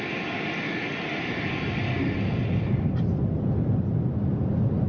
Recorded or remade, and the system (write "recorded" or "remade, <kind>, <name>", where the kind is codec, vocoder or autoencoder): recorded